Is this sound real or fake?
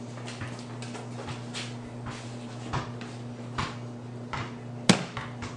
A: real